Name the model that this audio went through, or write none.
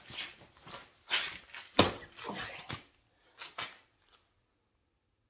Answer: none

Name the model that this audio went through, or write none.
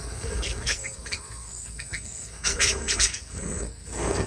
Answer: codec, SNAC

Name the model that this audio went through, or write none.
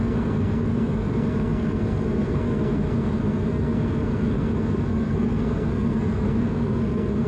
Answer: codec, SNAC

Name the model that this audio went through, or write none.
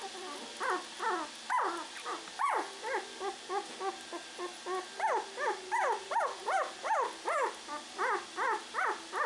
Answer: none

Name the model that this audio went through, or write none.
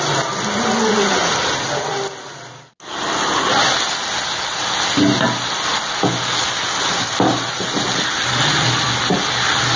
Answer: none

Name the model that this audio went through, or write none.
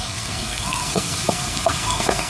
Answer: codec, SNAC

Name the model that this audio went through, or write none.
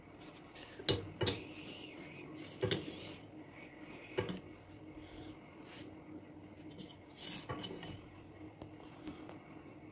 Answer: none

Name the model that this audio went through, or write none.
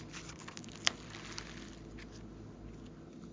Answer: none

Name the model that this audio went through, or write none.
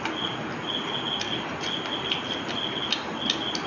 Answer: none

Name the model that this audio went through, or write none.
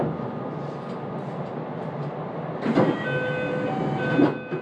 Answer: none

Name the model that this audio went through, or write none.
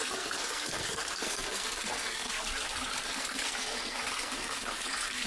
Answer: codec, SNAC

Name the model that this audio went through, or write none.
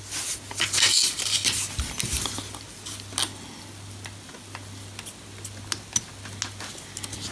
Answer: none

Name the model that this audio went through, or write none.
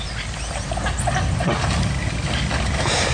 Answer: none